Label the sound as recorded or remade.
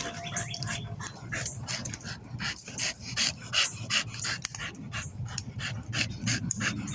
remade